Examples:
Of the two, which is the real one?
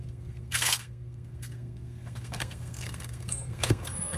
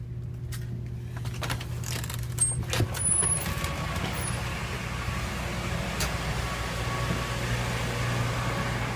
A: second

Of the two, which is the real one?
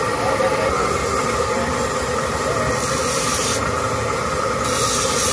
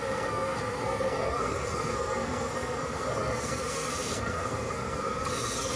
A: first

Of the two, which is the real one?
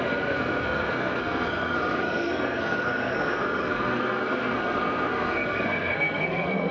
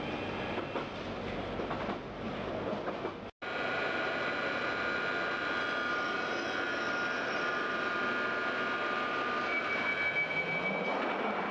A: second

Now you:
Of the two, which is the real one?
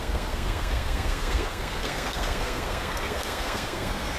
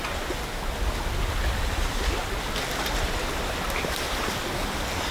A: second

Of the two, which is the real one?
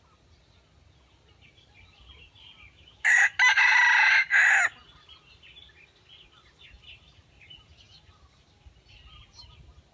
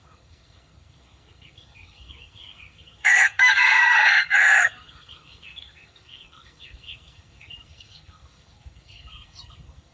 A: first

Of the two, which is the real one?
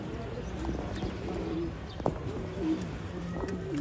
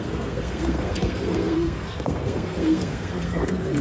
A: first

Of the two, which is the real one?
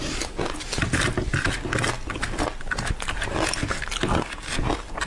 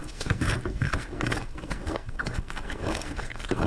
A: first